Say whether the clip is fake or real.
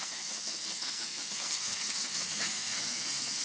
fake